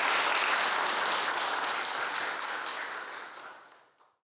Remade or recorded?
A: recorded